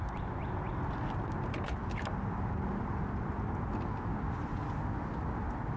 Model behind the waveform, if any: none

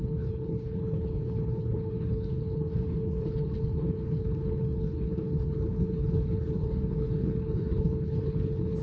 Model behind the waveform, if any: codec, HILCodec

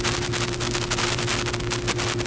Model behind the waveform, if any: none